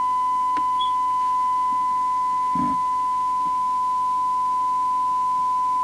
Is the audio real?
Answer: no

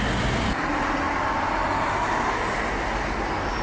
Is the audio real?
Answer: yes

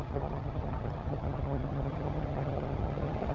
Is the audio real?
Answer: no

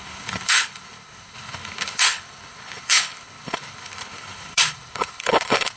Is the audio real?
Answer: no